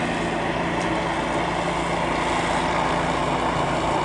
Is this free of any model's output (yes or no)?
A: yes